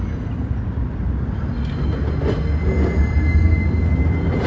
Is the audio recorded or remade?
recorded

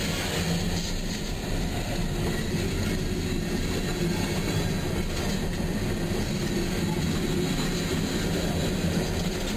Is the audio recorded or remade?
recorded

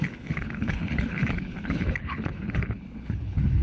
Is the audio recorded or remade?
remade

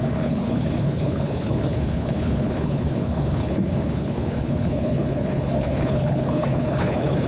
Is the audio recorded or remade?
remade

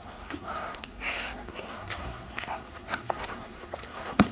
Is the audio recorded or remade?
remade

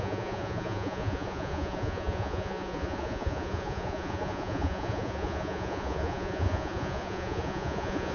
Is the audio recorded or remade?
remade